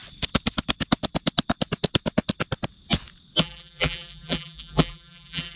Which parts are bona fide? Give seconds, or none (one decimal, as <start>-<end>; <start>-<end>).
0.0-3.4